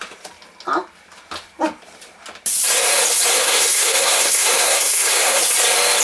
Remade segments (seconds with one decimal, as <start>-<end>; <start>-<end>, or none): 3.3-5.4